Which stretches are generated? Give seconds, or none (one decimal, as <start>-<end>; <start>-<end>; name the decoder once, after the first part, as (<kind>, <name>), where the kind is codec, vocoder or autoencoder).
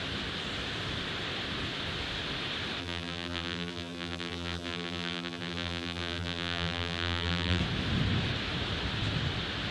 2.8-7.6 (vocoder, BigVGAN v2)